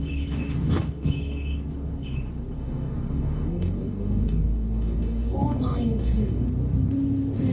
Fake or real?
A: fake